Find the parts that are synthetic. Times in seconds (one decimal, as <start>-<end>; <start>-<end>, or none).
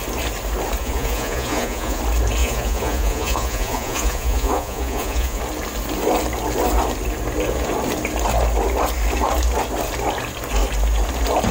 0.8-2.0; 2.4-5.4